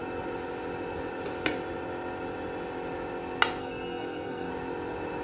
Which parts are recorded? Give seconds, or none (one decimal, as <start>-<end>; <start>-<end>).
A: 0.0-3.6; 4.5-5.2